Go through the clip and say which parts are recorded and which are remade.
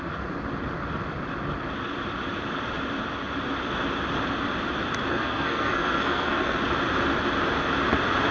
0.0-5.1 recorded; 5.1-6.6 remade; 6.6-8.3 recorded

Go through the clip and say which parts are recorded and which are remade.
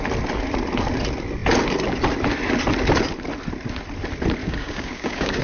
0.0-4.4 recorded; 4.4-5.4 remade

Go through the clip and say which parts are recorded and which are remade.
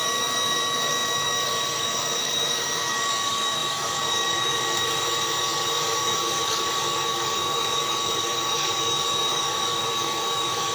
0.0-10.7 remade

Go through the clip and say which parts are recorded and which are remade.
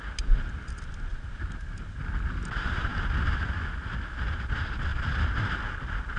0.0-1.1 recorded; 1.1-2.0 remade; 2.0-4.9 recorded; 4.9-5.5 remade; 5.5-6.2 recorded